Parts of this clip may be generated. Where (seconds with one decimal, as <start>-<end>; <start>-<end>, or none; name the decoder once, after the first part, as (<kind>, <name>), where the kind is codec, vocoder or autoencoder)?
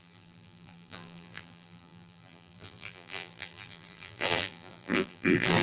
0.0-5.6 (vocoder, BigVGAN v2)